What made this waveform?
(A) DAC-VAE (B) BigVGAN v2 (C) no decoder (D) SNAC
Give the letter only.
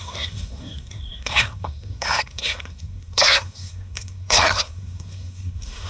D